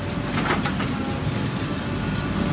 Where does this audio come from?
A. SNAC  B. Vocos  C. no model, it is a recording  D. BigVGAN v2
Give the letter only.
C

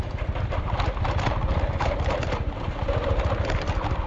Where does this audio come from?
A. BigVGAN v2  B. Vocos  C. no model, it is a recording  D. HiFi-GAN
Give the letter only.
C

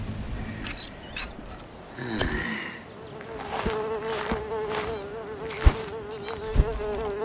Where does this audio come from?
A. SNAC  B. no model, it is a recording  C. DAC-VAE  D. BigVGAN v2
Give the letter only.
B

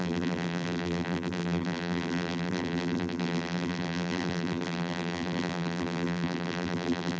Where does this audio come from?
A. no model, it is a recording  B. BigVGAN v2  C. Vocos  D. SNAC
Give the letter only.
B